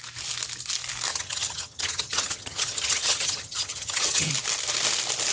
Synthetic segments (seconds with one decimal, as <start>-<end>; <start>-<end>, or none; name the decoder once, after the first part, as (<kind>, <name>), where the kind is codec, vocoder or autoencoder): 1.1-4.3 (vocoder, HiFi-GAN)